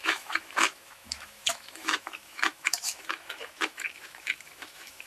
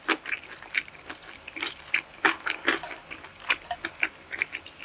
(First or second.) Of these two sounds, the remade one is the first